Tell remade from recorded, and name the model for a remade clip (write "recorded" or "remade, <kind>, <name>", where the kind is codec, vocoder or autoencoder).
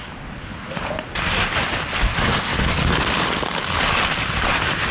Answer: recorded